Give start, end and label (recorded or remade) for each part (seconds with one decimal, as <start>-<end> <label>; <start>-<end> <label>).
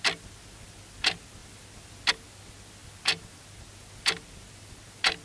0.0-5.2 recorded